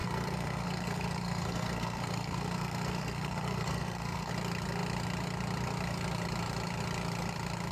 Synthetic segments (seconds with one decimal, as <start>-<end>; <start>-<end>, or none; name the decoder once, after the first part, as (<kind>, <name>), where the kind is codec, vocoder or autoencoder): 0.0-4.3 (codec, SNAC)